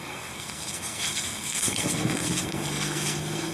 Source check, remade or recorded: remade